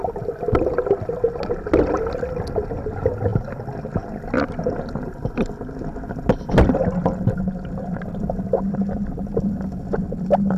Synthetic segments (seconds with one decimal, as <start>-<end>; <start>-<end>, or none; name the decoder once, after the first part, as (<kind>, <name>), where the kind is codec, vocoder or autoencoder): none

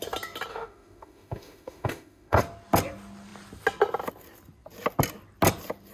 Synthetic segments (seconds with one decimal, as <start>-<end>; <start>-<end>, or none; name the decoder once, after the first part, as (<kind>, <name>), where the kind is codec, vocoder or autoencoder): 0.5-2.4 (autoencoder, DAC-VAE)

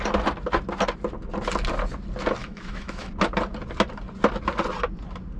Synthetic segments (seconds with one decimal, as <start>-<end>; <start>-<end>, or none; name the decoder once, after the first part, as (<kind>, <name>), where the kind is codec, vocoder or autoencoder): 2.4-3.1 (autoencoder, DAC-VAE)